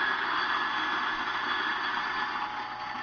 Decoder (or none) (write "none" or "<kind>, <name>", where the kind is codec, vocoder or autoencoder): none